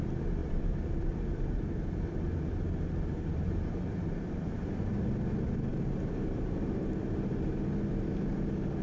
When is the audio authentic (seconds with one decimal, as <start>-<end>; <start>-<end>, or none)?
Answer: 0.0-0.4; 4.6-8.8